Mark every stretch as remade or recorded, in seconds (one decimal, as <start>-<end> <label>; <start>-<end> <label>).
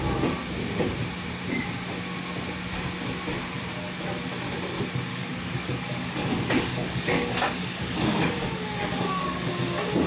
0.0-5.1 recorded; 5.1-9.5 remade; 9.5-10.1 recorded